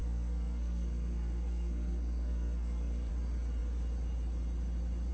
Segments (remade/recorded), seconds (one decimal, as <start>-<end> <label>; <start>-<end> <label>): 0.0-3.1 remade; 3.1-5.1 recorded